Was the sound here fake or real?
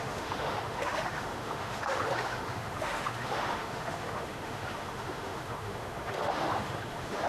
fake